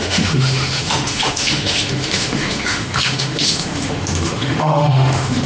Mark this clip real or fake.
fake